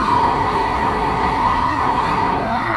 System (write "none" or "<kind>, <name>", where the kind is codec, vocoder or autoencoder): codec, SNAC